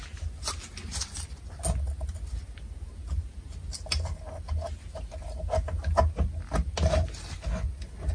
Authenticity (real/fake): real